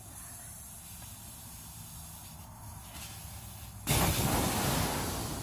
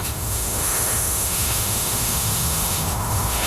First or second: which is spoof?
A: second